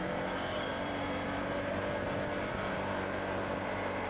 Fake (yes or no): yes